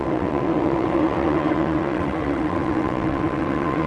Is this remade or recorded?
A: remade